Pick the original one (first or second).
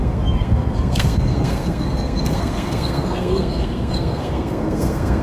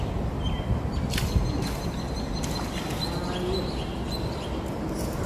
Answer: second